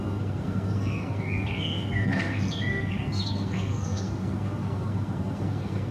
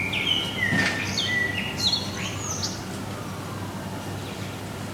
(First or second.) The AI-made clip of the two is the first